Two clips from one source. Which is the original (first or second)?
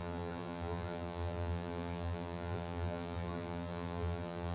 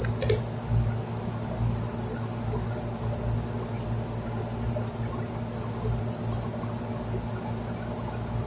second